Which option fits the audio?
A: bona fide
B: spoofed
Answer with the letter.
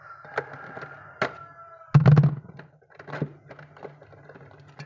A